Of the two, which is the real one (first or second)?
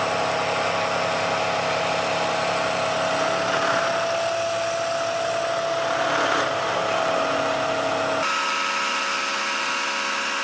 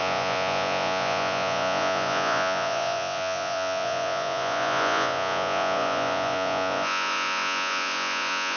first